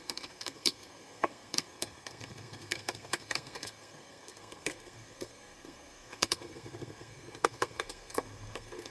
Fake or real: fake